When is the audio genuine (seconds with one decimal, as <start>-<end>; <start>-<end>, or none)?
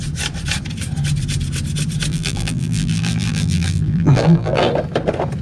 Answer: 0.0-2.1; 4.7-5.4